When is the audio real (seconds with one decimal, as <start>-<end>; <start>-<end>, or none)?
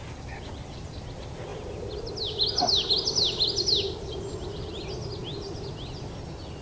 0.0-6.6